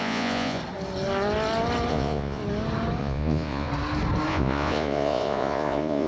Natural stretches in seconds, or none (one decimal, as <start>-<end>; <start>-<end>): 0.6-1.9; 2.4-3.0; 3.7-4.3